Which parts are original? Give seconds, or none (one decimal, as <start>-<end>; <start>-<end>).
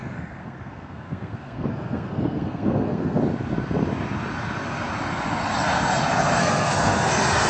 3.2-6.4; 7.1-7.5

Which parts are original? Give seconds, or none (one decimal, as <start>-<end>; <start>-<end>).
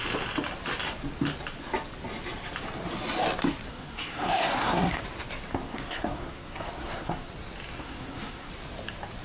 0.0-3.7; 5.0-5.5; 7.3-7.8; 8.5-9.2